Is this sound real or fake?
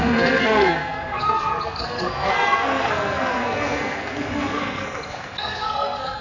fake